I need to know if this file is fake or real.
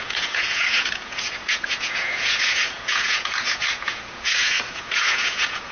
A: fake